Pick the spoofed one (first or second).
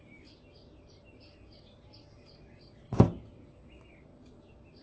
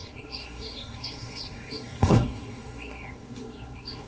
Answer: second